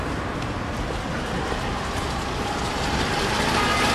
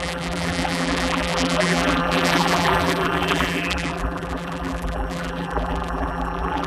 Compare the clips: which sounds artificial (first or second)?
second